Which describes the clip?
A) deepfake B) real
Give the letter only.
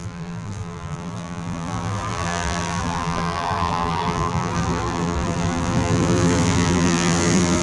A